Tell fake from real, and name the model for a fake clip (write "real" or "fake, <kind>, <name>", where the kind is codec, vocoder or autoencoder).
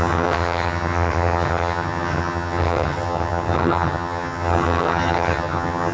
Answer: fake, vocoder, HiFi-GAN